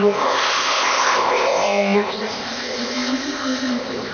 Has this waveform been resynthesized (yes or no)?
yes